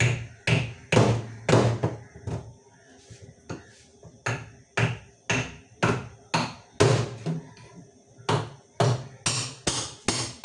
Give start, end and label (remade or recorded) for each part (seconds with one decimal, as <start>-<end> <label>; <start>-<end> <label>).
0.0-10.4 recorded

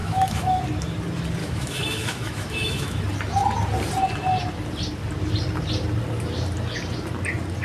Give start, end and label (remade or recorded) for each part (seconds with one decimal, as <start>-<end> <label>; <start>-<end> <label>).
0.0-0.6 remade; 0.6-1.4 recorded; 1.4-3.0 remade; 3.0-7.6 recorded

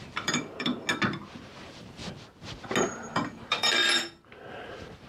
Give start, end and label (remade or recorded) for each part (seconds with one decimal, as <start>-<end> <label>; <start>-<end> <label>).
0.0-0.7 remade; 0.7-1.4 recorded; 1.4-2.0 remade; 2.0-2.8 recorded; 2.8-3.8 remade; 3.8-4.5 recorded; 4.5-5.1 remade

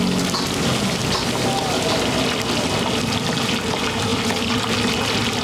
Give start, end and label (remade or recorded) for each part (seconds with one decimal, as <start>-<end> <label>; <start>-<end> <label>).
0.0-5.4 recorded

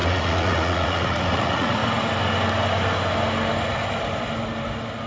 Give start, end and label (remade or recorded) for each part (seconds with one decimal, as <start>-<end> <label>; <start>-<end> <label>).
0.0-1.8 remade; 1.8-5.1 recorded

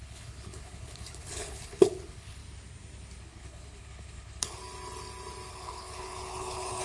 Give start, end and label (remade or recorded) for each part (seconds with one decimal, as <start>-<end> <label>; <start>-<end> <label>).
0.0-2.4 remade; 2.4-3.2 recorded; 3.2-4.6 remade; 4.6-5.5 recorded; 5.5-6.8 remade